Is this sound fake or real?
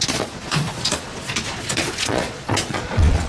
fake